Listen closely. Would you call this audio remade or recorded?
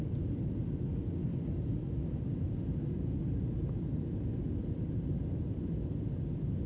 recorded